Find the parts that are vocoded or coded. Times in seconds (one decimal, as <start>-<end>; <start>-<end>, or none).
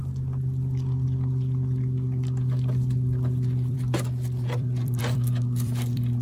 3.7-6.2